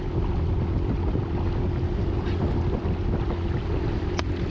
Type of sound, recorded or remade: recorded